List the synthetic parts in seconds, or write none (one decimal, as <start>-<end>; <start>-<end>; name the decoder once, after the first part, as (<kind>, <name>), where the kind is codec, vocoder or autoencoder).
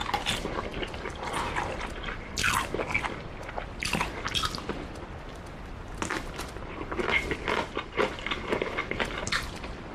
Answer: none